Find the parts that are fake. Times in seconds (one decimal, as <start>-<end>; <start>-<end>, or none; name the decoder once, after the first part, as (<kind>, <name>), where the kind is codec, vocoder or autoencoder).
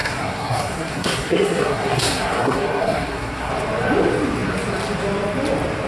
0.0-3.5 (codec, SNAC)